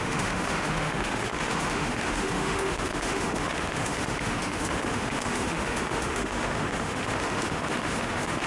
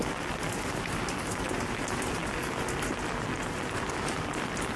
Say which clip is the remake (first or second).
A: first